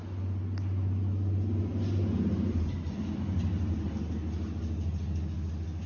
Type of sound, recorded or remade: recorded